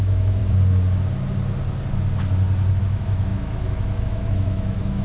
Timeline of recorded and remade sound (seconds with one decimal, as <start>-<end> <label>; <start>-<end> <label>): 0.0-0.4 remade; 0.4-2.8 recorded; 2.8-5.0 remade